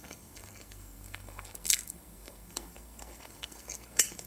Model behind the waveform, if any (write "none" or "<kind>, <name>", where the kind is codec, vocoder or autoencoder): codec, SNAC